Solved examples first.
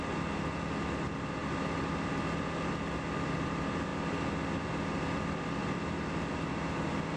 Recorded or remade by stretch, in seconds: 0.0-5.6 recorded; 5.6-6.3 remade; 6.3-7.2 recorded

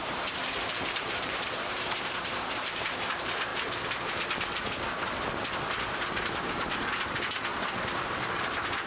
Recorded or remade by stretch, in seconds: 0.0-3.5 remade; 3.5-6.4 recorded; 6.4-8.9 remade

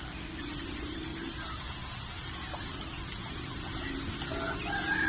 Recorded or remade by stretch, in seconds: 0.0-1.1 recorded; 1.1-3.3 remade; 3.3-5.1 recorded

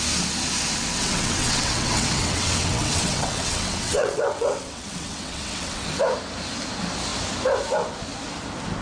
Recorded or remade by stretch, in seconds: 0.0-0.9 recorded; 0.9-6.0 remade; 6.0-8.8 recorded

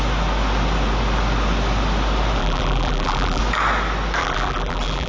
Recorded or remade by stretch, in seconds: 0.0-2.4 recorded; 2.4-3.4 remade; 3.4-4.2 recorded; 4.2-5.1 remade

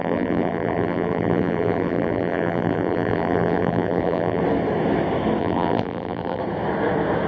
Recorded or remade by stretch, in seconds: 0.0-4.4 remade; 4.4-5.4 recorded; 5.4-6.4 remade; 6.4-7.3 recorded